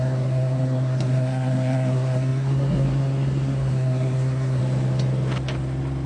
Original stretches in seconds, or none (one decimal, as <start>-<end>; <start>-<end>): 4.6-6.1